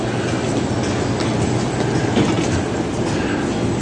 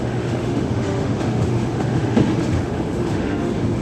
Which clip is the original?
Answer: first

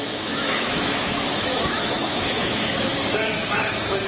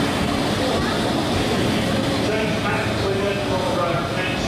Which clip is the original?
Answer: second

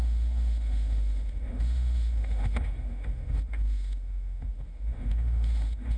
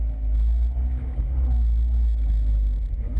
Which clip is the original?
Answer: second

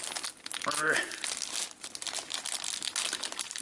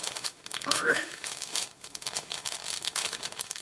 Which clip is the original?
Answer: first